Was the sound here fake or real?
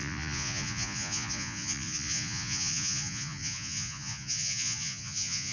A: fake